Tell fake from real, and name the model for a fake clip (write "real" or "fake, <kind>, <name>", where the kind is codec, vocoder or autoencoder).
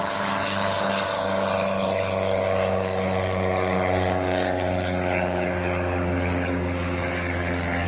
fake, codec, DAC